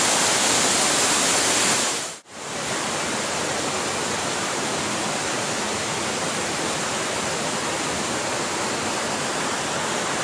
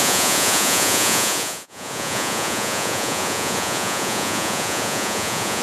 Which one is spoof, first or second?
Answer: second